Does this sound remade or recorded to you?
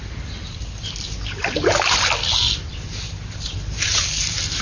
recorded